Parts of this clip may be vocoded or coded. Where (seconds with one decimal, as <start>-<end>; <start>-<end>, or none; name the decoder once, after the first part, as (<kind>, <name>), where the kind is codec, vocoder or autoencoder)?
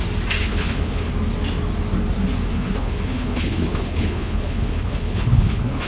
0.4-1.1 (codec, HILCodec); 2.5-5.9